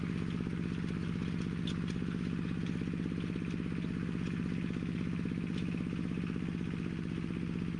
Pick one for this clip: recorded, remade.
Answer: recorded